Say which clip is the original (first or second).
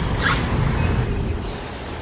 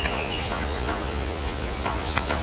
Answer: first